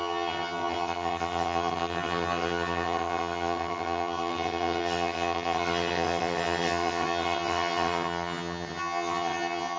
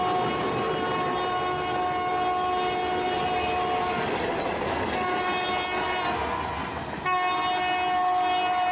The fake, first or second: first